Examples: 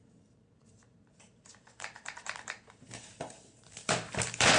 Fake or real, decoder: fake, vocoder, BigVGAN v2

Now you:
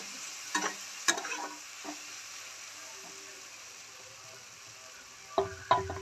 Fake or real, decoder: real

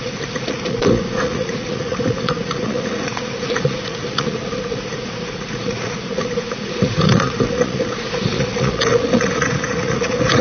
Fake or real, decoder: fake, vocoder, Vocos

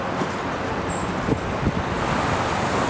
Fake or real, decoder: real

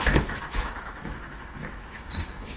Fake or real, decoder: fake, autoencoder, DAC-VAE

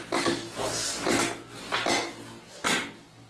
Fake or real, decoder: real